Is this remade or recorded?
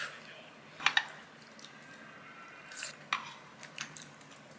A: recorded